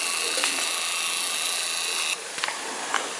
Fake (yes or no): no